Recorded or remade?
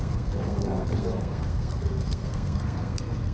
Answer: remade